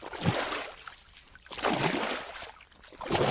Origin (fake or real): real